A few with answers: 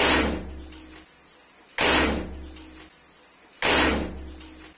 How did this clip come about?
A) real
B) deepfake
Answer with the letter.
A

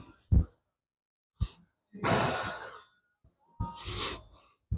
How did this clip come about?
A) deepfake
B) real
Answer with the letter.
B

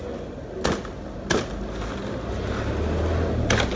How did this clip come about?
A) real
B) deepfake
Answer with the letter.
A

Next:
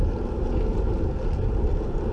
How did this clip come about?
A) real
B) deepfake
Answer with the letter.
A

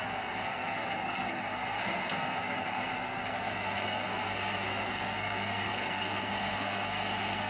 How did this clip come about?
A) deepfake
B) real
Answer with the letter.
A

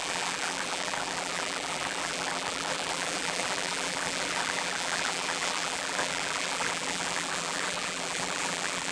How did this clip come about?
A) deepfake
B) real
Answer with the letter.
A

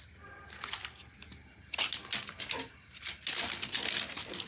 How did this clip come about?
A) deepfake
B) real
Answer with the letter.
B